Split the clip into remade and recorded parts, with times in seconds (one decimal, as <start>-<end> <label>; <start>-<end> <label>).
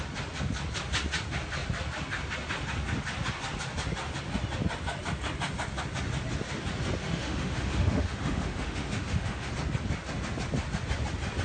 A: 0.0-7.0 recorded; 7.0-9.5 remade; 9.5-11.4 recorded